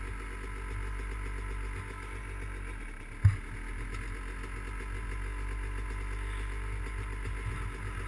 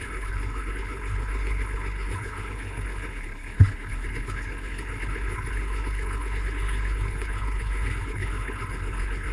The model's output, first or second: second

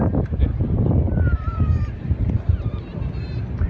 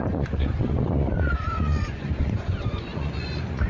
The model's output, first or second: second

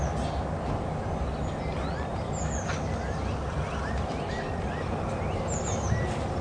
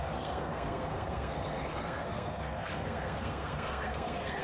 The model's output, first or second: second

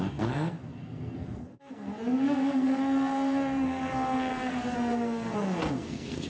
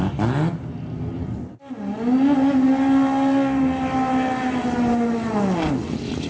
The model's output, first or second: first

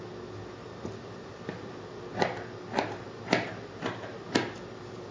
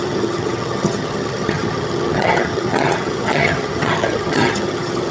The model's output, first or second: second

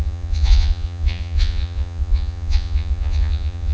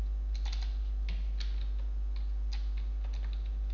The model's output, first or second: first